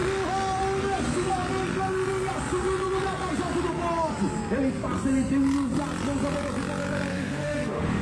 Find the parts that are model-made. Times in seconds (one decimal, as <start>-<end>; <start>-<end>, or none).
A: 7.1-8.0